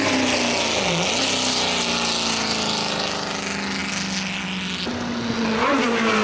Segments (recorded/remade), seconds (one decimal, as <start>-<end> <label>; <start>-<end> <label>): 0.0-6.2 recorded